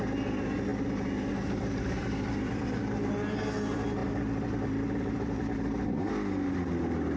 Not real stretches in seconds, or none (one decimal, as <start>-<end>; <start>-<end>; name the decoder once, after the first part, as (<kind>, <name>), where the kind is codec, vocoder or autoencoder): 2.0-2.8 (vocoder, BigVGAN v2); 4.0-6.0